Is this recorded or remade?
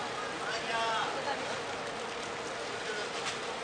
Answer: recorded